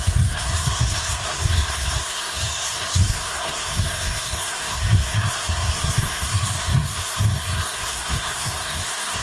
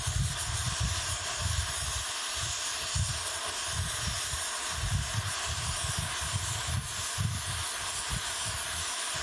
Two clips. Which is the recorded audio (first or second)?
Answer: second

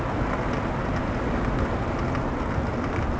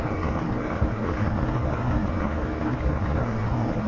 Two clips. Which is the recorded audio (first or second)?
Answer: first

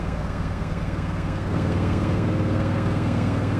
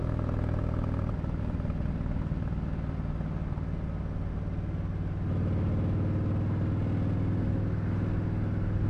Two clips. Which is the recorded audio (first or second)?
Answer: second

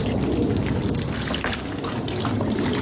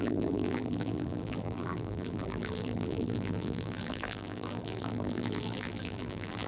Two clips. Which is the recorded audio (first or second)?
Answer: first